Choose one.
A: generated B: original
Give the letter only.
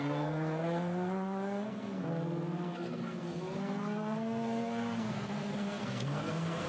A